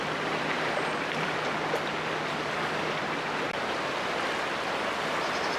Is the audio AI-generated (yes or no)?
no